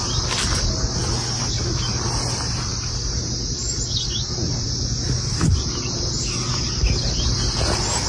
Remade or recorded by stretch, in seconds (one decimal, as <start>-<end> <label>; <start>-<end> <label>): 0.0-8.1 recorded